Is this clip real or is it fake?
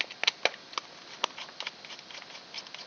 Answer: real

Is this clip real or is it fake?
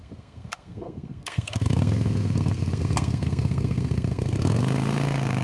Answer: fake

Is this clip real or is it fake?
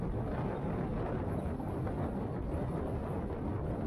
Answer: real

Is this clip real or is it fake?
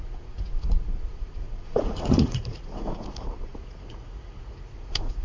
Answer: fake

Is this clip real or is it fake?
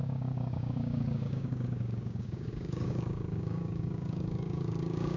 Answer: fake